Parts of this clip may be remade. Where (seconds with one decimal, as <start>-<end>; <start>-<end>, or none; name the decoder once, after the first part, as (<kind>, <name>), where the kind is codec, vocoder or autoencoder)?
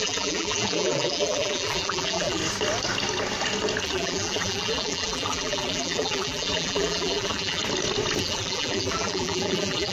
0.0-2.4 (vocoder, BigVGAN v2); 3.8-7.6; 8.2-9.9